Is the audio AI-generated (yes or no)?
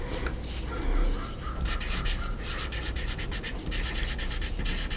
no